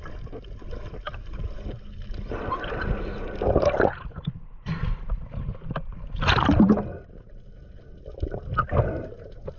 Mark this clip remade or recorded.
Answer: recorded